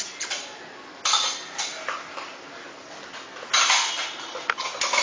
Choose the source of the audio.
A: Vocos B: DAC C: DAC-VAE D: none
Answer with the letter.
D